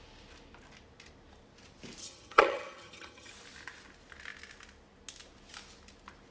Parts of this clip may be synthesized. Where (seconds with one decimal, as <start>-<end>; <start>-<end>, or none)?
2.0-3.3